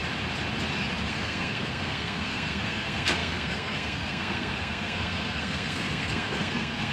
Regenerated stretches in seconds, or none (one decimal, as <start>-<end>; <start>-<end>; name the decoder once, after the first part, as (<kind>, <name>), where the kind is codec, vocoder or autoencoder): 1.1-6.9 (codec, SNAC)